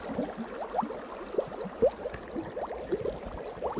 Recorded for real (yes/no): yes